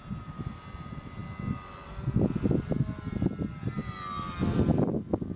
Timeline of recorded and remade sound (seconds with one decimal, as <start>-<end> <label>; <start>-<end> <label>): 0.0-5.4 recorded